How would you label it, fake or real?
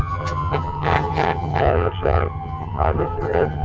fake